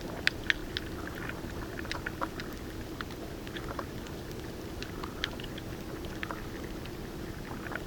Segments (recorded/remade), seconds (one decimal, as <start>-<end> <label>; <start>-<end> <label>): 0.0-7.9 recorded